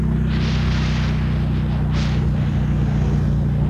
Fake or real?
real